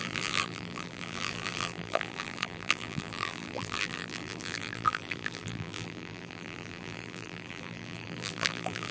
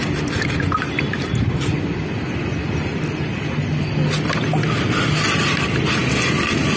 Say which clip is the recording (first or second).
second